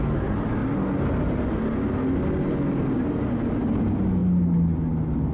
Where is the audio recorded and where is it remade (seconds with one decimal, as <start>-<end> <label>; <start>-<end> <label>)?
0.0-5.3 recorded